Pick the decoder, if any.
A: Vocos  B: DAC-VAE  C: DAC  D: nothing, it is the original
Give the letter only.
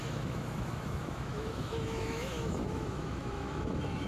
B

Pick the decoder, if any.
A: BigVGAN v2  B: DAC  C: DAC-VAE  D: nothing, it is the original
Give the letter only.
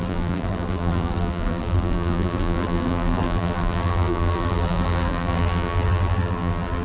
A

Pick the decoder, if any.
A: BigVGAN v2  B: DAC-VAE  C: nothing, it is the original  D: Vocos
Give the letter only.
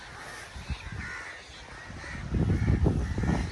C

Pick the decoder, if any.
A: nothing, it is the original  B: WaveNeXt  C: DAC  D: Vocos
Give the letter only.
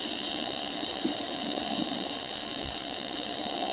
B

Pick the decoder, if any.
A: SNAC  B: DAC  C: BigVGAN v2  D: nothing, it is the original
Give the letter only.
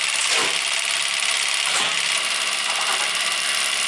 D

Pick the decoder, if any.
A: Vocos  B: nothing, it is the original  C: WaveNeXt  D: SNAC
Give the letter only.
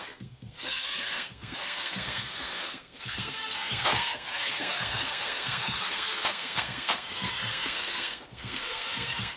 D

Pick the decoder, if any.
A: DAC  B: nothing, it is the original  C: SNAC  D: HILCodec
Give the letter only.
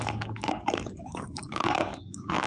A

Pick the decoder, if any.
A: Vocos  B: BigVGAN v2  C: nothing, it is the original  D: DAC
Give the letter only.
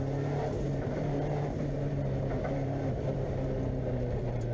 B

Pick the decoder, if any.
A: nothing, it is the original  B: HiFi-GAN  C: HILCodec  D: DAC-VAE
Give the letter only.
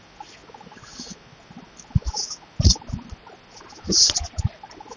A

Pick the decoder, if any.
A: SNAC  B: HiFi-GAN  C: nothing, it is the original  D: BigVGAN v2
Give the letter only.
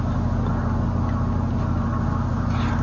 C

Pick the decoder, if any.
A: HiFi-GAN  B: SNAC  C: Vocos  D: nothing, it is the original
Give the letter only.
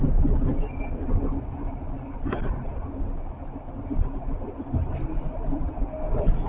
D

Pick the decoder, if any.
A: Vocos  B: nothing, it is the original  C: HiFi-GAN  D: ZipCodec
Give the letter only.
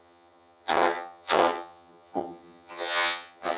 C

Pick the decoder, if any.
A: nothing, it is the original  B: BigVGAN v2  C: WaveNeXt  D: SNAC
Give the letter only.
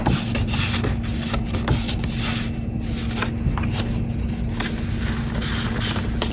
A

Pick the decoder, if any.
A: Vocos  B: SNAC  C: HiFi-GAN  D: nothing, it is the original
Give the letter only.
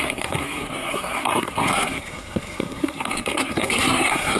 B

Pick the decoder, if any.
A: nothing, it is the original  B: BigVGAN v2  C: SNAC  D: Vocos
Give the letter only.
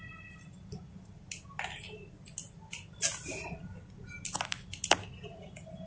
A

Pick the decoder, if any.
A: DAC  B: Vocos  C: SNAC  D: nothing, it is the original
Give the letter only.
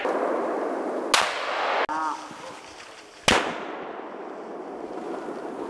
D